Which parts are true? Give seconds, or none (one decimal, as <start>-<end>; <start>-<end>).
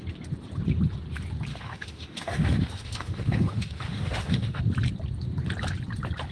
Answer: 0.0-1.5; 4.6-6.3